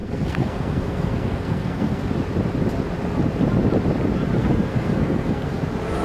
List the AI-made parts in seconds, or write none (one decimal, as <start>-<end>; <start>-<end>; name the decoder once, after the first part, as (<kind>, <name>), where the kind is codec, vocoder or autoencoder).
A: 0.0-2.1 (codec, SNAC); 4.4-5.6